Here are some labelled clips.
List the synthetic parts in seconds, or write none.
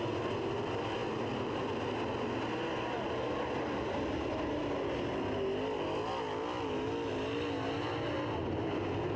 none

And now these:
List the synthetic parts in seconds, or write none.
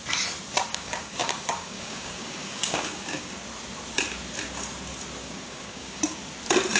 0.7-3.3 (codec, DAC); 5.2-6.0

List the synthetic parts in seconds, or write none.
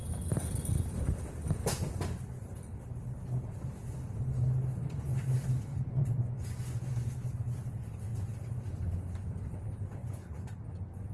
5.7-7.1 (vocoder, Vocos); 10.0-10.6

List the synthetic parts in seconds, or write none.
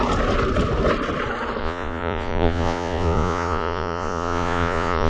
1.6-5.1 (vocoder, Vocos)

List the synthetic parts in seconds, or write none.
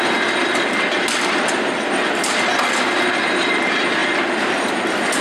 none